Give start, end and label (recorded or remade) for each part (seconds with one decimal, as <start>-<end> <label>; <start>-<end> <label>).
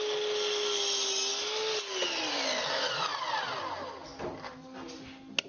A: 0.0-5.5 recorded